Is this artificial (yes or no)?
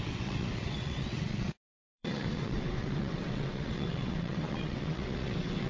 yes